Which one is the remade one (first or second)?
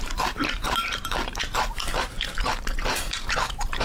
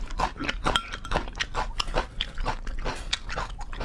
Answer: first